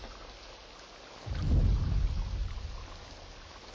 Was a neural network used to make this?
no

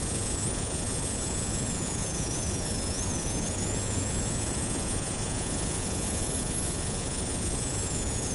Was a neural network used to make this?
yes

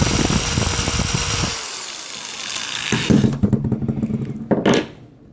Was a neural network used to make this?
no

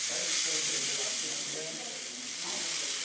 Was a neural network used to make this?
no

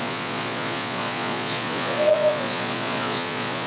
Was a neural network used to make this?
yes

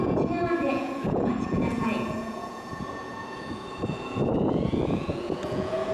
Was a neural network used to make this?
yes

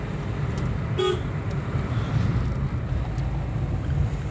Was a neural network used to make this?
no